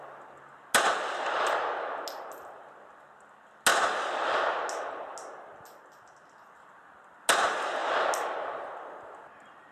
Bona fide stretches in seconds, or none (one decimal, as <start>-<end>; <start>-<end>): 0.0-9.7